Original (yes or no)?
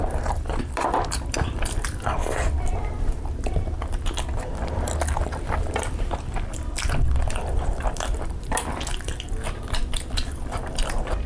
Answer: no